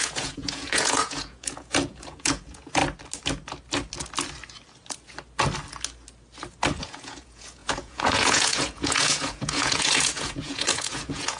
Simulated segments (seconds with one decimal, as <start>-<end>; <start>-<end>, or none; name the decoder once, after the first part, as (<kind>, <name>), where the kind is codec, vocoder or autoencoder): 0.0-2.8 (vocoder, Vocos); 6.8-11.4